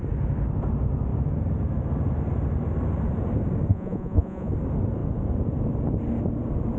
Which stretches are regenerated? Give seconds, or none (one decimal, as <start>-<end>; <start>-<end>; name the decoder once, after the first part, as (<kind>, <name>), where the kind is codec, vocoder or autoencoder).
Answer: 3.7-4.5 (vocoder, Vocos)